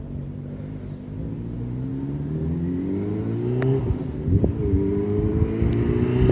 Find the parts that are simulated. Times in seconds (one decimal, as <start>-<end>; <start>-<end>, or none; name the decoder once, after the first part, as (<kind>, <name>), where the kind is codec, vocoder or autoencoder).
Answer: none